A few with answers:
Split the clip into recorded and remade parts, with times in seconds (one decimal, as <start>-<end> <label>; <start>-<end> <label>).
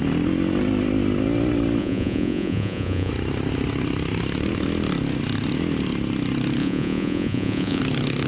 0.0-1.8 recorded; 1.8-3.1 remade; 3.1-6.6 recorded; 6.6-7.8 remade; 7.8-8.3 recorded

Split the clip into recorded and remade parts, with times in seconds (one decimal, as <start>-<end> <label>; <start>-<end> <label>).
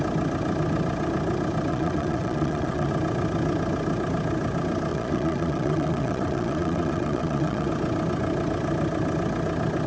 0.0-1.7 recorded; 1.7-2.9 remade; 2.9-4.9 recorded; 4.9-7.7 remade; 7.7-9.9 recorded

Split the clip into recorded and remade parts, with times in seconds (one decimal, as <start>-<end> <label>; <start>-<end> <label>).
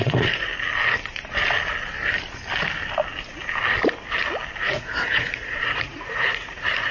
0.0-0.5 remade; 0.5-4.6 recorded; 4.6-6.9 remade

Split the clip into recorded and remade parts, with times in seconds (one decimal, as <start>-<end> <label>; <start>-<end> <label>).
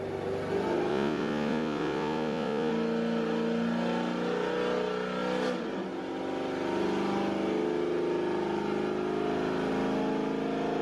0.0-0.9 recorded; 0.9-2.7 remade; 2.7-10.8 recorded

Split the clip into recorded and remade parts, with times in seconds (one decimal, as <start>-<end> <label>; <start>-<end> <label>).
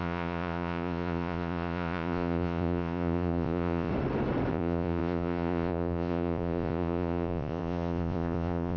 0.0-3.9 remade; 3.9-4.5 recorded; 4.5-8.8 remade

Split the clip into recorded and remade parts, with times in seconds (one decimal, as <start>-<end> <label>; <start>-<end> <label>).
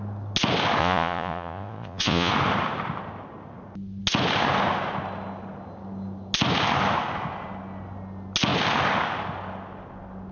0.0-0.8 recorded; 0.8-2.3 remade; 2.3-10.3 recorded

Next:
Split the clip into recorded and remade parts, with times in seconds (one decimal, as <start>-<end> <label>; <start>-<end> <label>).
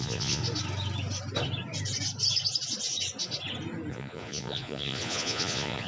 0.0-0.4 remade; 0.4-3.9 recorded; 3.9-5.9 remade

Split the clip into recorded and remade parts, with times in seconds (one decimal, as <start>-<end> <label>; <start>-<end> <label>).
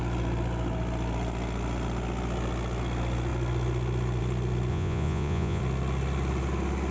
0.0-4.7 recorded; 4.7-5.6 remade; 5.6-6.9 recorded